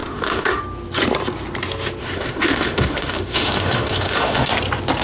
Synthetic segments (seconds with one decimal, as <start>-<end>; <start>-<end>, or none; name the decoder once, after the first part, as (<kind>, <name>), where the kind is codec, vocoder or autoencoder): 0.0-0.6 (autoencoder, DAC-VAE); 2.0-4.5